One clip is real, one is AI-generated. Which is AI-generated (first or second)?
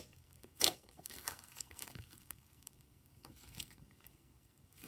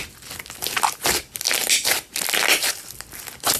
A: first